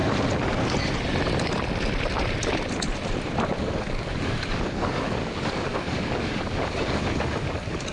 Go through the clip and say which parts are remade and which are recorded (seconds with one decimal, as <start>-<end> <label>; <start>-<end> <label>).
0.0-3.6 recorded; 3.6-7.9 remade

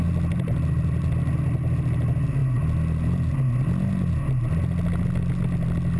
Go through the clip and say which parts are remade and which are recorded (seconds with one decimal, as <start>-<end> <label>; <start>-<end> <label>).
0.0-6.0 recorded

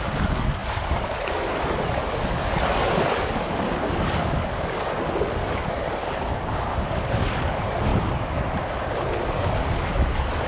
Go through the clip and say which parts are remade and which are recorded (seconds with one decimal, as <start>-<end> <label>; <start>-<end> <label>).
0.0-6.0 remade; 6.0-7.1 recorded; 7.1-7.9 remade; 7.9-9.2 recorded; 9.2-10.5 remade

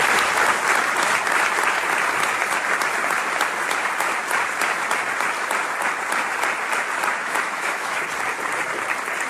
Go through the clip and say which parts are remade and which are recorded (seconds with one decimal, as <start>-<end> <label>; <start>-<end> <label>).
0.0-7.2 recorded; 7.2-8.0 remade; 8.0-9.3 recorded

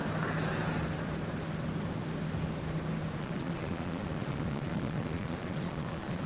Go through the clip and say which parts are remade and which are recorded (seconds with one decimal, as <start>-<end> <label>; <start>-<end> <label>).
0.0-3.2 recorded; 3.2-6.3 remade

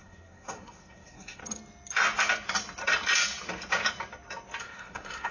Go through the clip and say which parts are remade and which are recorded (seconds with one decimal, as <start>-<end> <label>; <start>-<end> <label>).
0.0-1.4 remade; 1.4-4.6 recorded; 4.6-5.3 remade